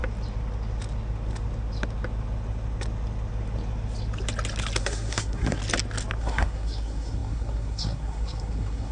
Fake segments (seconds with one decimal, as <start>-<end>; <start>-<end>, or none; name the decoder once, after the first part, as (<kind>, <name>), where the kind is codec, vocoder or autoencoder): 4.8-5.6 (codec, SNAC); 6.2-8.9